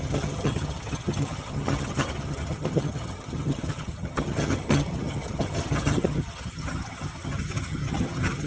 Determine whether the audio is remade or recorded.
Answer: remade